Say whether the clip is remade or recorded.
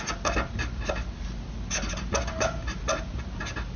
recorded